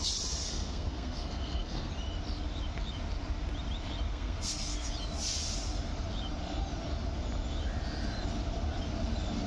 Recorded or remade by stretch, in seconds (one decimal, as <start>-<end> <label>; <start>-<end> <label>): 0.0-0.4 recorded; 0.4-1.9 remade; 1.9-4.1 recorded; 4.1-4.9 remade; 4.9-9.5 recorded